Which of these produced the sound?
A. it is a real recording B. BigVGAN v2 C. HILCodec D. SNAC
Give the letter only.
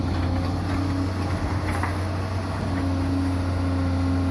A